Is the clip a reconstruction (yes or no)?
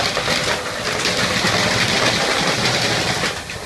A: no